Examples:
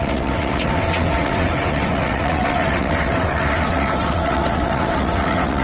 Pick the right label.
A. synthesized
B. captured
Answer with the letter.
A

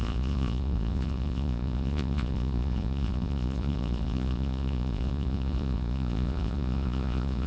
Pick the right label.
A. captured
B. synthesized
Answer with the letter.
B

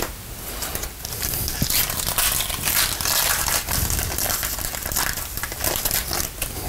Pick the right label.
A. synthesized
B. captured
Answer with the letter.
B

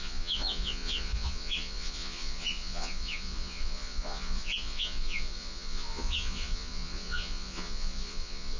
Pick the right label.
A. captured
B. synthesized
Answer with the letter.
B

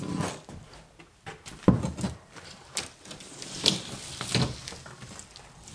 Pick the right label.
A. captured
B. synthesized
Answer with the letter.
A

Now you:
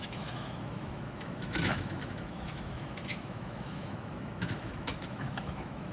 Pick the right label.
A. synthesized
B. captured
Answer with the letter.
A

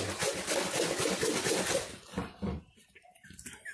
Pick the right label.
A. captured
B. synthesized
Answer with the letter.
A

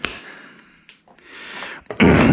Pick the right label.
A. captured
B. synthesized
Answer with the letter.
A